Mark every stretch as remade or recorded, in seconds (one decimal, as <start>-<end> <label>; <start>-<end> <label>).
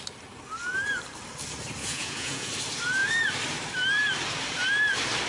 0.0-1.8 recorded; 1.8-2.5 remade; 2.5-5.3 recorded